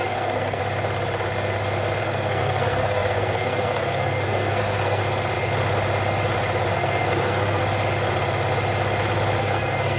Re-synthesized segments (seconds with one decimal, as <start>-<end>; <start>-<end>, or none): 0.0-0.6; 2.0-5.0; 6.7-7.6; 9.4-10.0